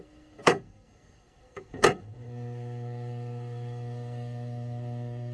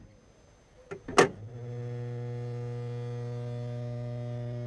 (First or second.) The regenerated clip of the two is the first